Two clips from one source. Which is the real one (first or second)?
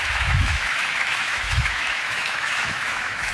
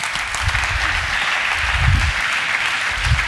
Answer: second